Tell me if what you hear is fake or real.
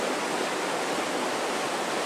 real